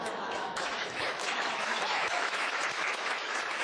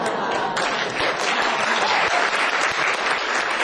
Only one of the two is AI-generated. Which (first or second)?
first